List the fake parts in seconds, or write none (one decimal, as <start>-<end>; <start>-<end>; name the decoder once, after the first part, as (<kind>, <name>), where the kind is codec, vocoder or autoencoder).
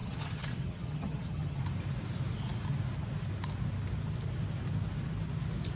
0.0-1.6 (vocoder, HiFi-GAN)